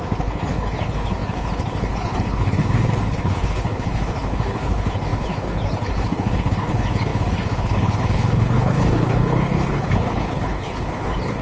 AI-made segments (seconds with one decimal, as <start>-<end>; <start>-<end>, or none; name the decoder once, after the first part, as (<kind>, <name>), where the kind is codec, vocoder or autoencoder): 0.0-11.4 (codec, HILCodec)